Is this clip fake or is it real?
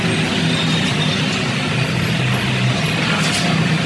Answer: real